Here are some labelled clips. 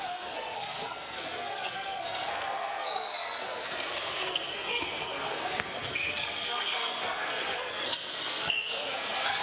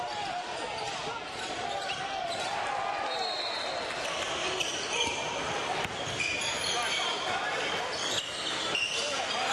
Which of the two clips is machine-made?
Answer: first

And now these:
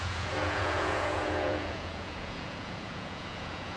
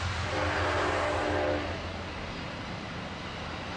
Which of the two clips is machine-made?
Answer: first